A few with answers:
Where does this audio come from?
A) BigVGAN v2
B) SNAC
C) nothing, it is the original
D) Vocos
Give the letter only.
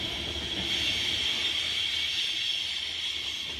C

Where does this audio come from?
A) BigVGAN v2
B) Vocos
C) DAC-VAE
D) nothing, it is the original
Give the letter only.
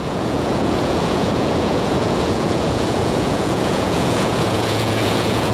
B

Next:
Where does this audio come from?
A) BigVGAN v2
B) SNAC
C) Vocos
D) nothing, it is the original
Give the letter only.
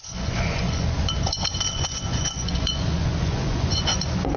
C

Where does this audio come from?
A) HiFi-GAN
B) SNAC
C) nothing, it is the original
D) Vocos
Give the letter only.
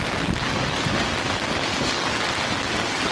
C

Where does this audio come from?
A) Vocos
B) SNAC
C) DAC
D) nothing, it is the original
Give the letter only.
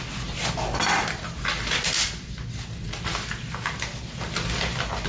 D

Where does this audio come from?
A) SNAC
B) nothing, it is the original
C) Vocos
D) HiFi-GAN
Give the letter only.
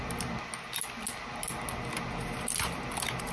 B